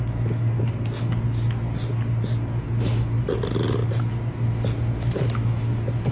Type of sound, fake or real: real